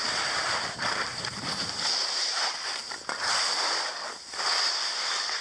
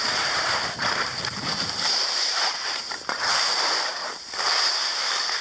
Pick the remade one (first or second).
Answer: second